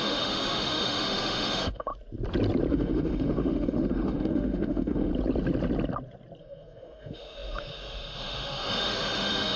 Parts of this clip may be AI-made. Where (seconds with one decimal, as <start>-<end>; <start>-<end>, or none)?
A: 0.0-1.9; 2.7-5.1; 6.4-9.6